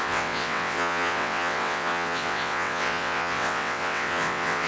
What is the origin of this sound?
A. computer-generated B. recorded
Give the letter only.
A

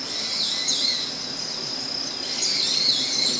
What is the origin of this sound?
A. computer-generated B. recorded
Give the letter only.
B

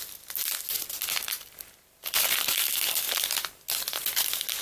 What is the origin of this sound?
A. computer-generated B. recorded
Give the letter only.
B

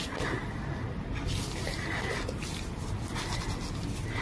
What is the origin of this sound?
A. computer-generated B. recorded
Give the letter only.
B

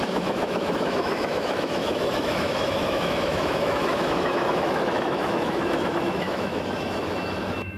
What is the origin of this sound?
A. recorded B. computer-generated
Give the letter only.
B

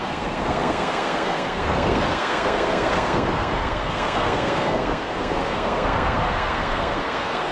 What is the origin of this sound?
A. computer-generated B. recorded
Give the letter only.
A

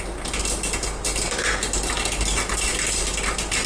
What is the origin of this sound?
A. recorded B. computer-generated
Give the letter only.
A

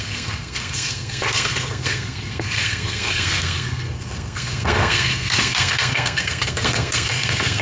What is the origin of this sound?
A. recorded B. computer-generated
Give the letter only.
B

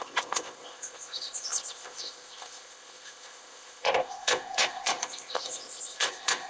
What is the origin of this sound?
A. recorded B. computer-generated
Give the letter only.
B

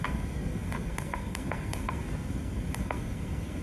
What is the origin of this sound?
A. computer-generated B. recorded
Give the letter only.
A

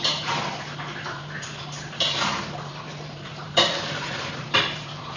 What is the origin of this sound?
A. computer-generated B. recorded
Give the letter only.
A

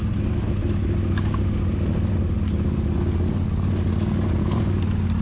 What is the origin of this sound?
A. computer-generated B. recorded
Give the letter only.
B